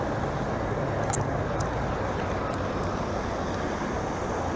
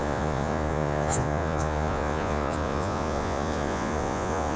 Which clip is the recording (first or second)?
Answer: first